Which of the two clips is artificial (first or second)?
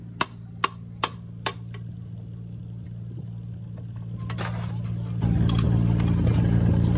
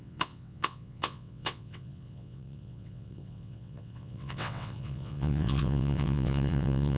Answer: second